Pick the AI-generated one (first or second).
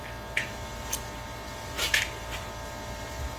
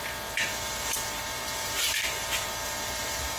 second